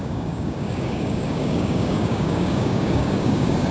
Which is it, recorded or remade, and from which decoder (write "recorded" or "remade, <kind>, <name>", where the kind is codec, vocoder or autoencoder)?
remade, codec, DAC